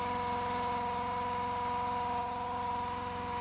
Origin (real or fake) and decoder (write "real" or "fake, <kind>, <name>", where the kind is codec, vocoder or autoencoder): real